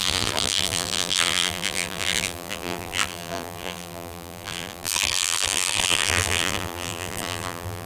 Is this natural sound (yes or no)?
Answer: no